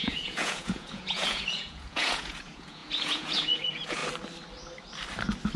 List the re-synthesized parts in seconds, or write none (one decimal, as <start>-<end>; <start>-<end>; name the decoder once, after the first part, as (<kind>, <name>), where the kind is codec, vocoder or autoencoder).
0.0-4.0 (vocoder, Vocos)